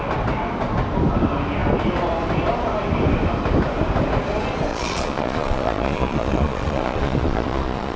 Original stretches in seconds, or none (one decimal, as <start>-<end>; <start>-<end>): 0.0-4.7